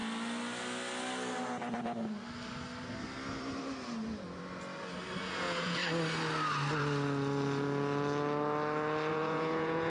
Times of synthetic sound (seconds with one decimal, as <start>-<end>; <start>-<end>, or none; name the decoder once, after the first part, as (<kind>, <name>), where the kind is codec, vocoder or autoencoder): 5.2-5.8 (vocoder, Vocos); 9.1-9.9